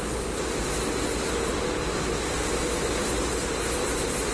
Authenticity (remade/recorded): recorded